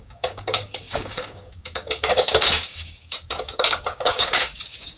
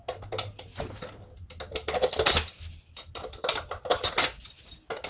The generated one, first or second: first